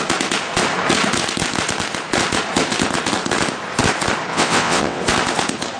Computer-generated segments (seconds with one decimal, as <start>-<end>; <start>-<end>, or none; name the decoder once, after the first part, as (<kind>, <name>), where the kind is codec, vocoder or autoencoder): 4.3-5.0 (vocoder, WaveNeXt)